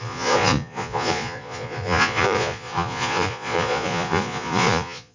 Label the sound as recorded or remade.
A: remade